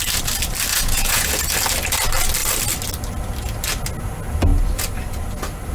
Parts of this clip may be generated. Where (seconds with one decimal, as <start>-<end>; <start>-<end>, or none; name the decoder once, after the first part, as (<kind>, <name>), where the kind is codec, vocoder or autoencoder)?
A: 0.7-1.3 (vocoder, Vocos)